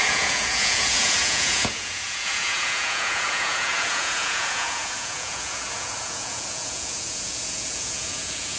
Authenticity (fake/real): fake